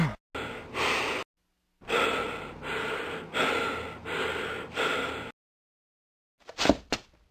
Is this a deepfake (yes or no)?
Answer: no